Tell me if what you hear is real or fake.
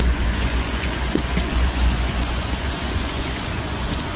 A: fake